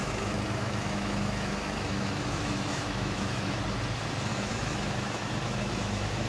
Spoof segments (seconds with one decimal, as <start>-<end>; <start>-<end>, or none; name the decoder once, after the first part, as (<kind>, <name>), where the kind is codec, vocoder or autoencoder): 0.0-3.6 (autoencoder, DAC-VAE); 4.3-6.3